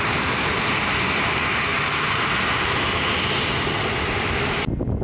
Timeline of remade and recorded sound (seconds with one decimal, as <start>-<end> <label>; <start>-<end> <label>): 0.0-5.0 recorded